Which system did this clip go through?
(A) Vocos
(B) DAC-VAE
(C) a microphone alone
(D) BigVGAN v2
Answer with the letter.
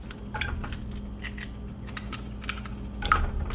C